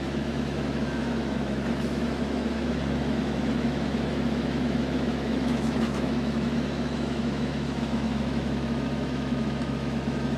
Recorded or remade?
remade